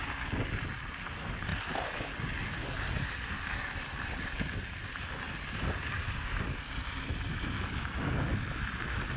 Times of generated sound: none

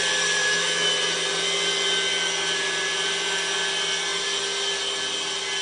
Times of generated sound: 0.4-0.9 (autoencoder, DAC-VAE)

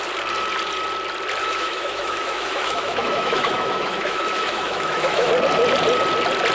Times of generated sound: 1.4-5.3 (autoencoder, DAC-VAE)

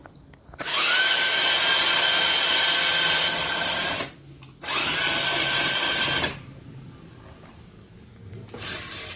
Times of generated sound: 0.7-1.5 (autoencoder, DAC-VAE)

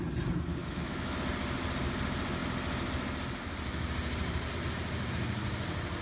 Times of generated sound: 0.6-1.2 (autoencoder, DAC-VAE)

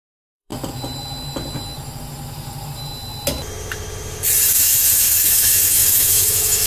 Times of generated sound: 0.0-0.5 (autoencoder, DAC-VAE); 4.5-6.7

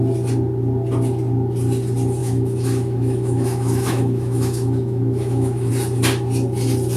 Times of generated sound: 2.2-5.7 (autoencoder, DAC-VAE)

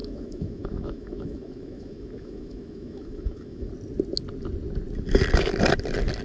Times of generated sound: 0.0-3.7 (autoencoder, DAC-VAE)